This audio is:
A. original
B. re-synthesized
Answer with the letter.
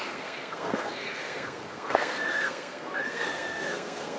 B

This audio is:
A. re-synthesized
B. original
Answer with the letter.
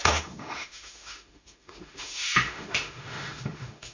A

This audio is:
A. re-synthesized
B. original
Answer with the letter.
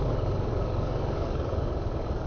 A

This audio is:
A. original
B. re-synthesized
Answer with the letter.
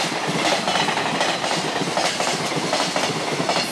A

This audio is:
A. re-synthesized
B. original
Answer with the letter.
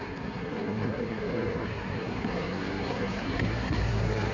A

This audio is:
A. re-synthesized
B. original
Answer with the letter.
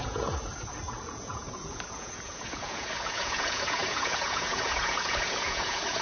A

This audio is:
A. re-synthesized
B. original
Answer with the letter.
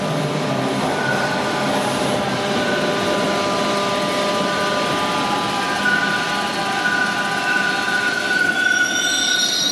B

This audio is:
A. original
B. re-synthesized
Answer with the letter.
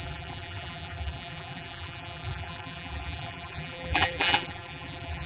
B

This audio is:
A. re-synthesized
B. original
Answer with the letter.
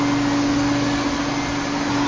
B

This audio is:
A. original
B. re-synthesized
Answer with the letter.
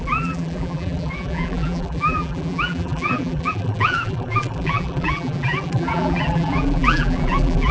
B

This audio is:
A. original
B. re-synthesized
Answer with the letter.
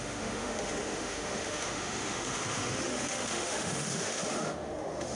B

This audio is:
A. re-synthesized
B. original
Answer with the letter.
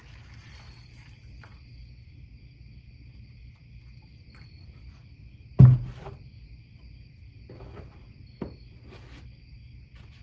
B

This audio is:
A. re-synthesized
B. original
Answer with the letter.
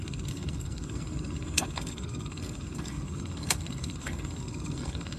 A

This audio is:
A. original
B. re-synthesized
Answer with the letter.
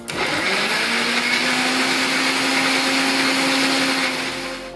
A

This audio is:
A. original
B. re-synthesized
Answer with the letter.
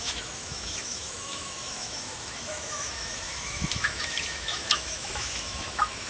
B